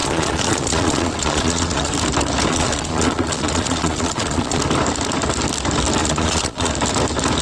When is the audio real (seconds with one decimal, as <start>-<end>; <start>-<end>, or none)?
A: 1.9-2.5; 4.6-6.0; 6.7-7.4